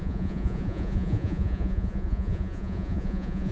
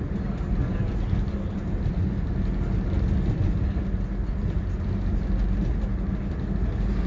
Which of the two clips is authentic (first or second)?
second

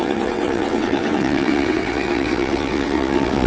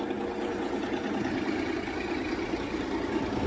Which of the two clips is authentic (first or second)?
second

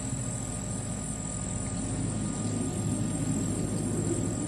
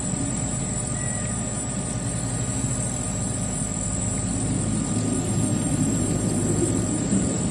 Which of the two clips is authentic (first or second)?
first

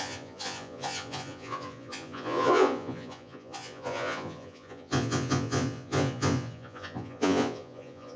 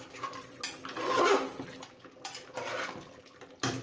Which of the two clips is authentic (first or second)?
second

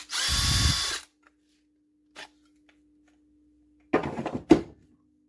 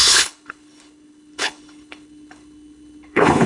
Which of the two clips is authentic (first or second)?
first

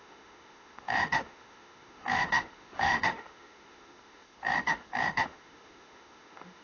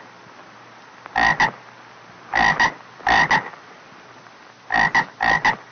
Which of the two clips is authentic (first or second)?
second